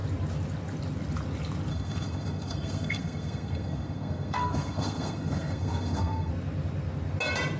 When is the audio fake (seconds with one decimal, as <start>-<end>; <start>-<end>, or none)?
1.7-6.3

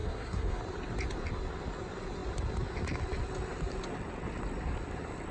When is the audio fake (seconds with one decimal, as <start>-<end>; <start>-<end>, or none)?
0.0-0.6

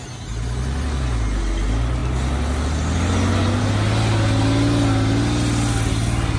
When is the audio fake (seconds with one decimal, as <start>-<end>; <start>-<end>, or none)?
none

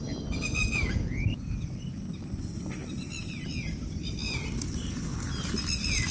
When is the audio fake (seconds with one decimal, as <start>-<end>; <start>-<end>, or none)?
none

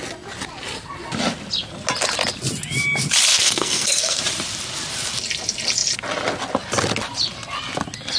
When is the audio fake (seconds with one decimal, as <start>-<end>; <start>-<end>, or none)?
3.3-4.2

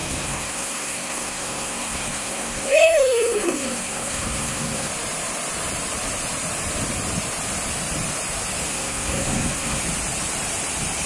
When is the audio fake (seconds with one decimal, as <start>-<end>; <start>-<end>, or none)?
0.0-4.9; 8.7-9.8

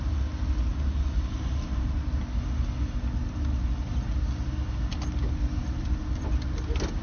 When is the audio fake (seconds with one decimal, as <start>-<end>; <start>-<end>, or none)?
none